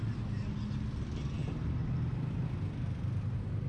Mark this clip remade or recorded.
recorded